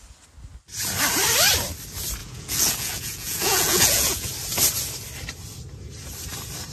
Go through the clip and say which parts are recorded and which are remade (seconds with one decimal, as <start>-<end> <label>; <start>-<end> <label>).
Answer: 0.0-2.2 recorded; 2.2-4.3 remade; 4.3-6.7 recorded